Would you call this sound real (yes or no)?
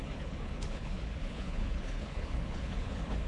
no